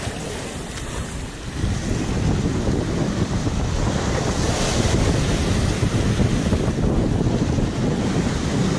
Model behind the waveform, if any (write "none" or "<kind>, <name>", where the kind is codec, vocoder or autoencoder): none